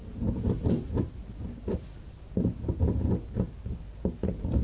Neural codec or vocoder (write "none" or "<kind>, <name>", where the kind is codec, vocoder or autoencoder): none